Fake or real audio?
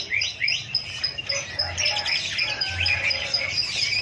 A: real